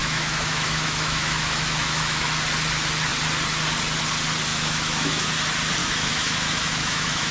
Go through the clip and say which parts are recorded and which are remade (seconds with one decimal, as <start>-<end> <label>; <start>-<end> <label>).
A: 0.0-2.3 remade; 2.3-4.5 recorded; 4.5-5.3 remade; 5.3-5.8 recorded; 5.8-7.3 remade